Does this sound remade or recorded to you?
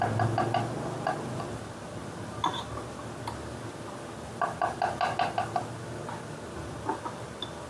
recorded